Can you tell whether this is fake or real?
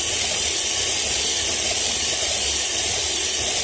real